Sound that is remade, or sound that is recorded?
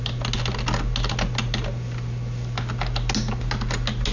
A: recorded